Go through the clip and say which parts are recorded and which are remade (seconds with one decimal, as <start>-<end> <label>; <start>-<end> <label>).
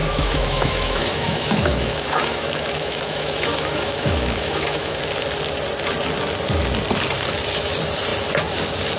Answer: 0.0-5.0 remade; 5.0-9.0 recorded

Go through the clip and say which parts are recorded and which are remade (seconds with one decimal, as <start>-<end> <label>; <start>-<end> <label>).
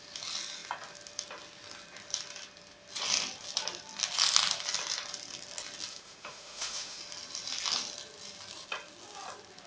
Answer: 0.0-5.9 recorded; 5.9-7.0 remade; 7.0-9.7 recorded